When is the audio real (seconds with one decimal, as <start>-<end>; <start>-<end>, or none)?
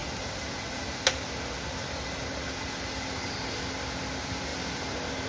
0.0-5.3